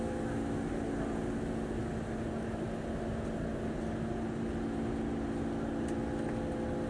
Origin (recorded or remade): recorded